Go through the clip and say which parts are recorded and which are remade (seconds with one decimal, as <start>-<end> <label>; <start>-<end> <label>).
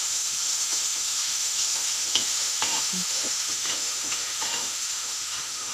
0.0-5.7 remade